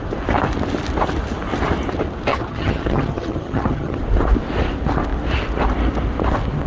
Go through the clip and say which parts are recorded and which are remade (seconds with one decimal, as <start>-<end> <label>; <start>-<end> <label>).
0.0-2.3 recorded; 2.3-4.0 remade; 4.0-6.7 recorded